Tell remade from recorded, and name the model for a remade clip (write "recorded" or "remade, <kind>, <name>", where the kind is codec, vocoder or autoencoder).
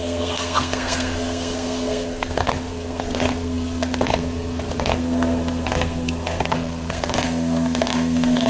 remade, codec, SNAC